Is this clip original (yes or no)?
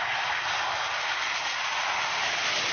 yes